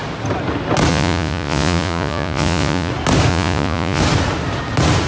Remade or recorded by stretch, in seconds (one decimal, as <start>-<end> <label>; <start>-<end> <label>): 0.0-0.9 recorded; 0.9-2.9 remade; 2.9-3.3 recorded; 3.3-4.0 remade; 4.0-5.1 recorded